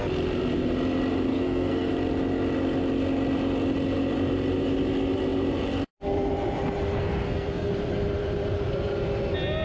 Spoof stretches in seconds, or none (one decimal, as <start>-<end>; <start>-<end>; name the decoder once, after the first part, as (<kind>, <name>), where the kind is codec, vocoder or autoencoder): 1.3-1.9 (codec, SNAC); 6.9-7.7